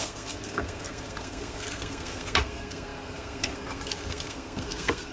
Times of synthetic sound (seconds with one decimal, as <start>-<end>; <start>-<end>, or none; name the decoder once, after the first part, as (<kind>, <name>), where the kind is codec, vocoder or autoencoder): 0.0-5.1 (codec, SNAC)